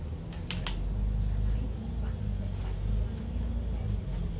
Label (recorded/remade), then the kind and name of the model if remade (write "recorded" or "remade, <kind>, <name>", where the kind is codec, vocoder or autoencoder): recorded